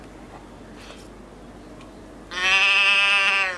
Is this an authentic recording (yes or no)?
yes